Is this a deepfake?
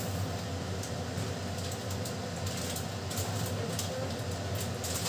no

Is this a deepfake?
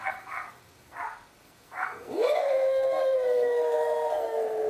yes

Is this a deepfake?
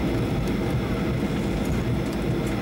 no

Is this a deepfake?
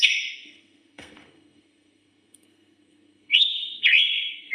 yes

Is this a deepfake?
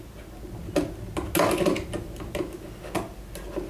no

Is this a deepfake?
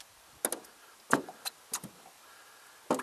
no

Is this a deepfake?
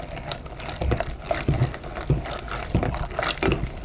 no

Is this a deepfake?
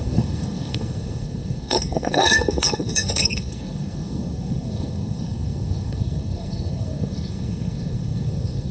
yes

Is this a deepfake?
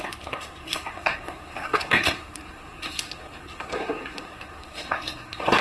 yes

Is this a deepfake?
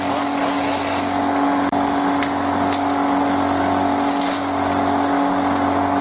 no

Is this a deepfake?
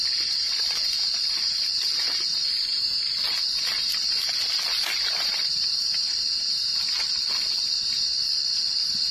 no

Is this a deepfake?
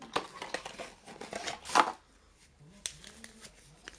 no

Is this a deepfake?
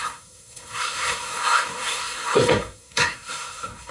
yes